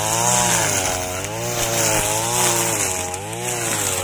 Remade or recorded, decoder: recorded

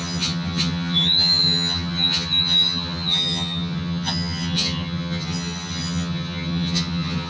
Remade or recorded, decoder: remade, vocoder, HiFi-GAN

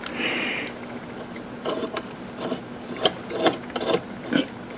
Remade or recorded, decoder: recorded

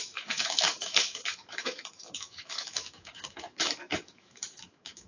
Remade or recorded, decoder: remade, autoencoder, DAC-VAE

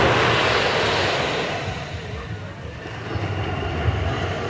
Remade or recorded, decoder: recorded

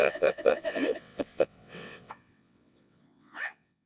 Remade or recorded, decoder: remade, vocoder, WaveNeXt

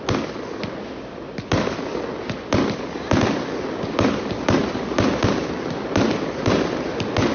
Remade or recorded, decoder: recorded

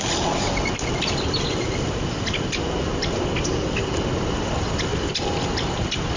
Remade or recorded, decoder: recorded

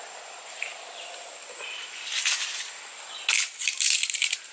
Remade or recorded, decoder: recorded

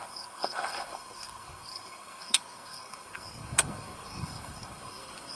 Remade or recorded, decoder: remade, codec, SNAC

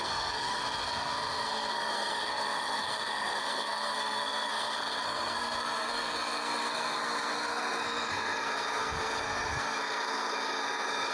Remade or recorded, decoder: remade, codec, SNAC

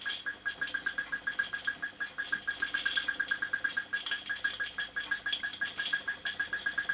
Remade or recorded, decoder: recorded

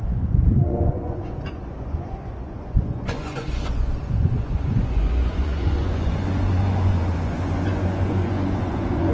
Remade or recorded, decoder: remade, vocoder, Vocos